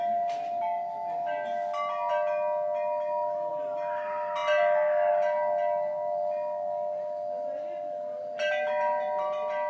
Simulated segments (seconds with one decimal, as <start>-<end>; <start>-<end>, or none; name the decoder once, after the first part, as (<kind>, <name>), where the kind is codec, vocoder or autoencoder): none